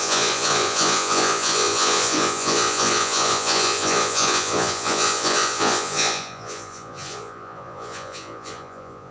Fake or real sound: fake